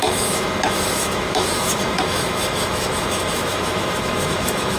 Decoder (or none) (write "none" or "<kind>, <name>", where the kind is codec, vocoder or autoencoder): autoencoder, DAC-VAE